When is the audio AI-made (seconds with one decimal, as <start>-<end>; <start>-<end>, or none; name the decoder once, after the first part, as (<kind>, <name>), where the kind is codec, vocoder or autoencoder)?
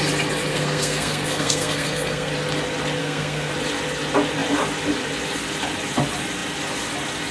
0.5-2.3 (codec, SNAC); 3.0-3.5